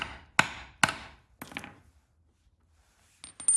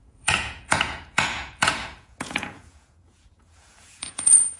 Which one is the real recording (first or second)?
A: first